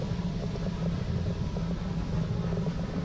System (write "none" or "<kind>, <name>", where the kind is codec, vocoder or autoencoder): none